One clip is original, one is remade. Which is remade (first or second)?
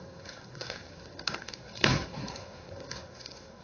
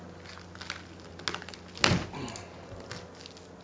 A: first